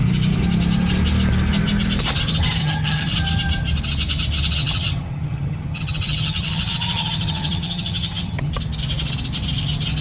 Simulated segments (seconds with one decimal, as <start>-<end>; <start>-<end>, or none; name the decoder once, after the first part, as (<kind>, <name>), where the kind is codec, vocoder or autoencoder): 2.6-3.1 (vocoder, HiFi-GAN); 4.6-8.5